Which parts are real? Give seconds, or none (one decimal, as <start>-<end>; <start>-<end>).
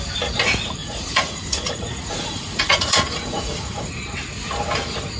0.0-0.8; 3.9-5.2